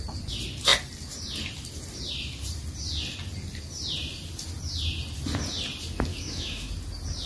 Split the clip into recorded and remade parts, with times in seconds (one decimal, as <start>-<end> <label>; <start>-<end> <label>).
0.0-6.1 recorded; 6.1-6.7 remade; 6.7-7.3 recorded